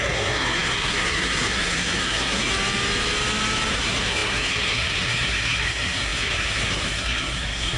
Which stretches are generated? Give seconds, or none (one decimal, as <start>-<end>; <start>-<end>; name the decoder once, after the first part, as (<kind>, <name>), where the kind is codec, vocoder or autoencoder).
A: 0.0-2.5 (codec, SNAC); 3.7-7.8